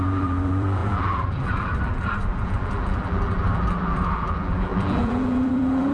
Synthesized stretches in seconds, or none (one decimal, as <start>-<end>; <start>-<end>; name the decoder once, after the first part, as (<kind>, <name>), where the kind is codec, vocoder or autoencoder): 0.0-5.9 (vocoder, BigVGAN v2)